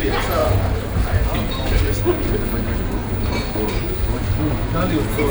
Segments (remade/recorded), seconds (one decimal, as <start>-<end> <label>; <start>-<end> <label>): 0.0-0.4 recorded; 0.4-1.9 remade; 1.9-5.3 recorded